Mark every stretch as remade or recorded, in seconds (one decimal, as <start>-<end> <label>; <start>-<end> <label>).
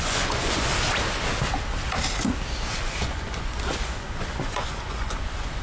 0.0-0.7 remade; 0.7-2.6 recorded; 2.6-5.6 remade